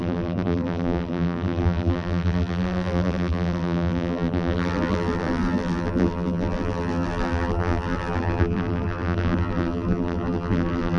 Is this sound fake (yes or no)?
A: yes